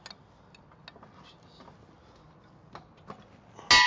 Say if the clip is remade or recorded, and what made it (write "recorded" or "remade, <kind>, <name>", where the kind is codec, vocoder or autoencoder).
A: recorded